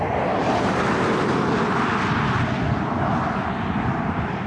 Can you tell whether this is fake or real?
real